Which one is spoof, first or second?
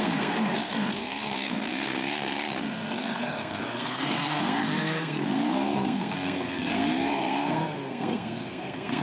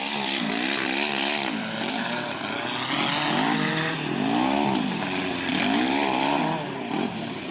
first